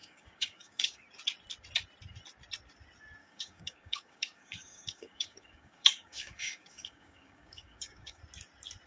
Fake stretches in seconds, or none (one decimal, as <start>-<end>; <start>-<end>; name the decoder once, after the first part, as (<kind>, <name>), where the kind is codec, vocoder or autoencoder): 0.0-1.0 (codec, DAC); 3.2-8.2